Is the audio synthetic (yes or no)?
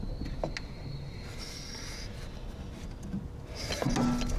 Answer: no